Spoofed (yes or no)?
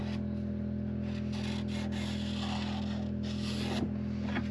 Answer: no